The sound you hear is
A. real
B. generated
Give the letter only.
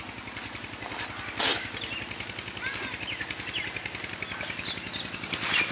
A